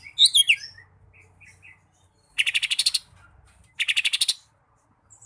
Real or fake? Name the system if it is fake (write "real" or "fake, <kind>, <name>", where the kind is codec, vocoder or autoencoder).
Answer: real